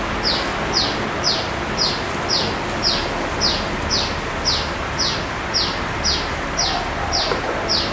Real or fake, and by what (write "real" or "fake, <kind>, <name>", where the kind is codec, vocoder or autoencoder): real